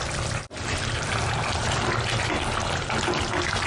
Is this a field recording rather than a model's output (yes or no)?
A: yes